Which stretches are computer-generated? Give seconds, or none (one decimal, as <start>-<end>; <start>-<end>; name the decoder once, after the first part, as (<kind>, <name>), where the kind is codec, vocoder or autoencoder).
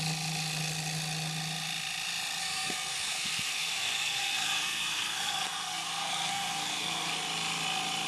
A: 2.4-7.2 (codec, SNAC)